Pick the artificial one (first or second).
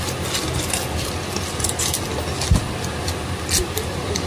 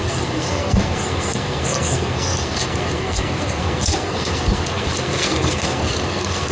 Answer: second